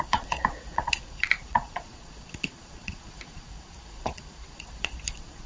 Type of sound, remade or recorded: remade